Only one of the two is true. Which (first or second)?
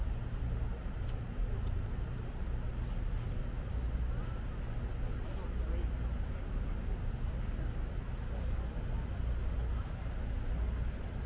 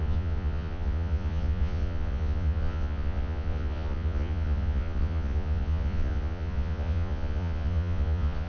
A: first